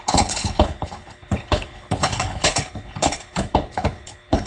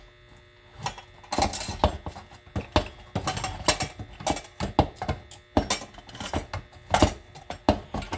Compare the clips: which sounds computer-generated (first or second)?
first